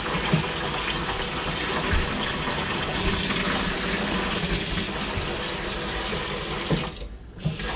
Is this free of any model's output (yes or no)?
yes